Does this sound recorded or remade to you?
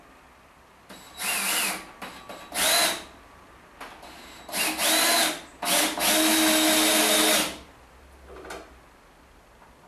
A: recorded